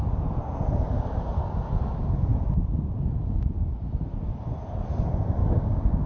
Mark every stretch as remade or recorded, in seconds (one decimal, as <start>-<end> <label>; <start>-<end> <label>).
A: 0.0-5.4 recorded; 5.4-6.1 remade